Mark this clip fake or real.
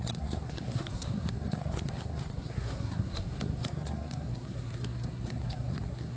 fake